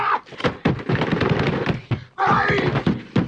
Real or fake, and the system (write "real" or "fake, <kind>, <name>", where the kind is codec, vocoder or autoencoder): real